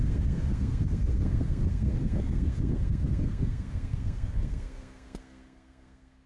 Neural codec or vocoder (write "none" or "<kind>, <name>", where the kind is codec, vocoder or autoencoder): codec, SNAC